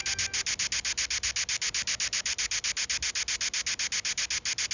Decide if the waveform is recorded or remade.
recorded